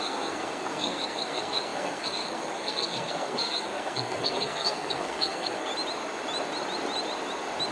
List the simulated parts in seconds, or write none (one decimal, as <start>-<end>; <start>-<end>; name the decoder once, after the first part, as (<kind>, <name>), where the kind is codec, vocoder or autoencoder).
0.0-5.7 (codec, SNAC)